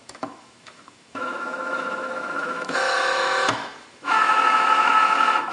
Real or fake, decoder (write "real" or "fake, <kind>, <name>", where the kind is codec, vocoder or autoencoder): fake, autoencoder, DAC-VAE